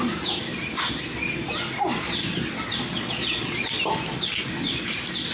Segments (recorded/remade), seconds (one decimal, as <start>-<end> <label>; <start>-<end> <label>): 0.0-2.9 recorded; 2.9-3.8 remade; 3.8-5.3 recorded